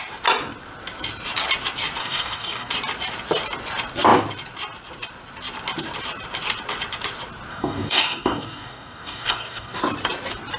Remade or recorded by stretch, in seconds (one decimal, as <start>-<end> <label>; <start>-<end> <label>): 0.0-2.0 recorded; 2.0-2.7 remade; 2.7-7.5 recorded; 7.5-9.8 remade; 9.8-10.6 recorded